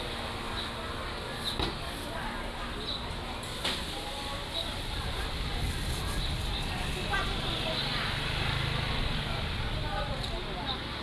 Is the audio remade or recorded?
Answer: recorded